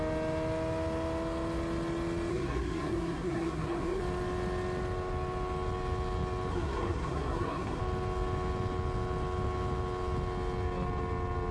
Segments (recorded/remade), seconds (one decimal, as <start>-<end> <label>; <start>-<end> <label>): 0.0-2.3 recorded; 2.3-4.0 remade; 4.0-6.5 recorded; 6.5-7.8 remade; 7.8-11.5 recorded